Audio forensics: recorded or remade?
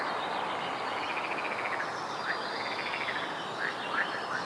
recorded